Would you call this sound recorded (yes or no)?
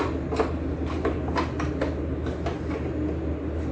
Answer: yes